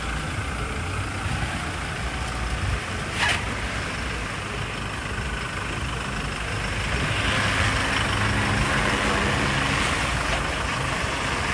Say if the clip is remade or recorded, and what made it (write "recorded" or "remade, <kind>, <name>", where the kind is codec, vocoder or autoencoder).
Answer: recorded